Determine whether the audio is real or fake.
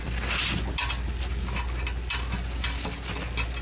real